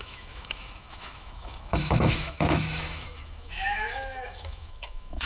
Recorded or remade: remade